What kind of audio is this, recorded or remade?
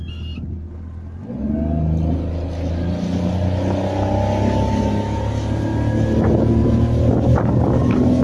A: recorded